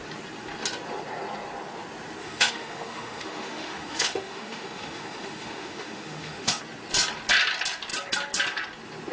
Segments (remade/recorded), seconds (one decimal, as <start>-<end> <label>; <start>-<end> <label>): 0.0-2.2 recorded; 2.2-6.6 remade; 6.6-9.1 recorded